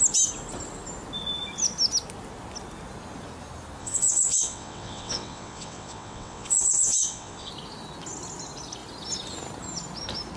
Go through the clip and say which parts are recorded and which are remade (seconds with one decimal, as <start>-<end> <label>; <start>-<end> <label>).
0.0-3.8 recorded; 3.8-7.5 remade; 7.5-10.4 recorded